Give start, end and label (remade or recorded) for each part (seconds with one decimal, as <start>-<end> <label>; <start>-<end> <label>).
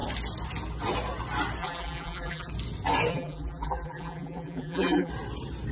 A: 0.0-1.6 recorded; 1.6-2.5 remade; 2.5-3.1 recorded; 3.1-5.1 remade; 5.1-5.7 recorded